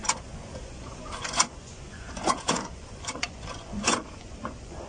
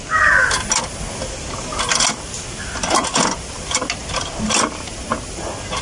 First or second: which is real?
second